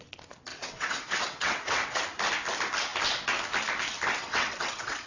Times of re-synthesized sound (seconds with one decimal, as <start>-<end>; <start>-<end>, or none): 0.5-2.0; 4.2-5.1